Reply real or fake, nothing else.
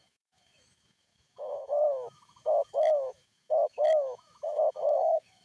fake